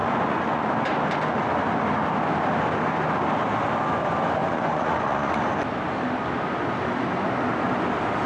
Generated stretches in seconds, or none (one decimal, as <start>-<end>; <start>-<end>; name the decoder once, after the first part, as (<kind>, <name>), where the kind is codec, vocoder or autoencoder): 0.0-0.7 (vocoder, Vocos); 4.4-5.4